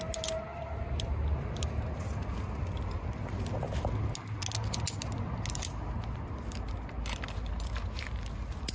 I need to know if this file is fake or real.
real